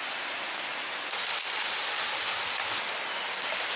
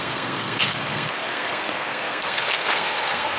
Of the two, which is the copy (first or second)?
second